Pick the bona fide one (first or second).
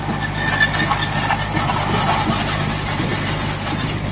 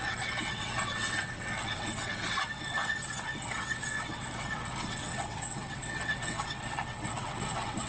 first